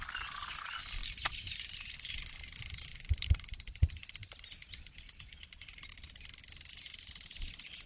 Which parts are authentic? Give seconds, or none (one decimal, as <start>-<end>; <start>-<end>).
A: 0.0-1.0; 2.1-2.9; 4.4-7.9